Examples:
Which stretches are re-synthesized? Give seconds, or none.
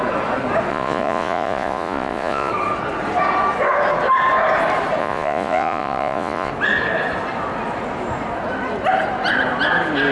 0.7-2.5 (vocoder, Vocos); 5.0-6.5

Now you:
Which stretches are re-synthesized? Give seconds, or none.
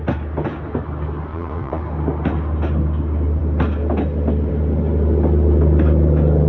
1.3-1.8 (vocoder, Vocos)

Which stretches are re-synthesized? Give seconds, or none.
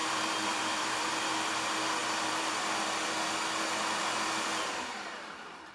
0.0-1.1 (vocoder, BigVGAN v2); 2.0-3.4; 4.9-5.7